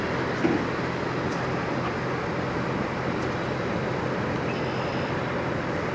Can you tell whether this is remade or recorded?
recorded